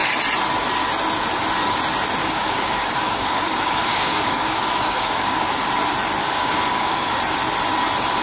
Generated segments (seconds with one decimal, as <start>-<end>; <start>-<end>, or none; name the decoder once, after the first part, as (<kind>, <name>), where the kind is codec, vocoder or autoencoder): 2.2-5.7 (codec, DAC); 6.2-7.2